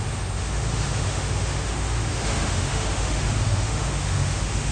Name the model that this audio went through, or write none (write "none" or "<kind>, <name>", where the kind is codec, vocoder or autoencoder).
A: autoencoder, DAC-VAE